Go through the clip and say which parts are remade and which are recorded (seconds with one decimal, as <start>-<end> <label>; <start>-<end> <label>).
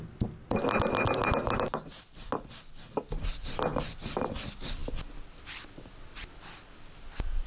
0.0-7.5 recorded